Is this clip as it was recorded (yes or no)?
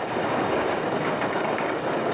no